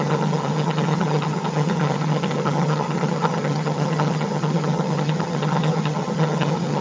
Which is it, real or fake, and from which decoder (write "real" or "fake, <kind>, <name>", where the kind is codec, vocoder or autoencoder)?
fake, vocoder, HiFi-GAN